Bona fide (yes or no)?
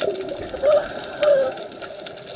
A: yes